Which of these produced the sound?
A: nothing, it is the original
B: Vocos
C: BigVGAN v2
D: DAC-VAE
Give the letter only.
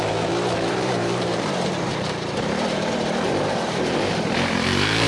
C